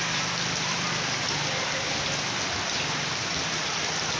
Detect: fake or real real